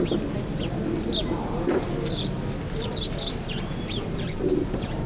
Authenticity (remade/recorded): recorded